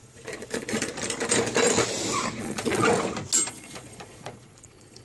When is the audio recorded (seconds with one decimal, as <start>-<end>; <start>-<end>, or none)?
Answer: 0.9-2.4; 2.9-3.5